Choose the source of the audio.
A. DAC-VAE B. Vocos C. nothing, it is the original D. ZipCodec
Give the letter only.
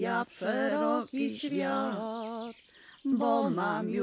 C